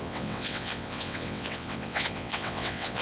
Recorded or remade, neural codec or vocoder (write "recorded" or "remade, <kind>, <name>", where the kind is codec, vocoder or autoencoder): remade, vocoder, WaveNeXt